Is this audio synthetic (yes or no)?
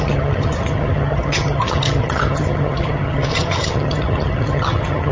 yes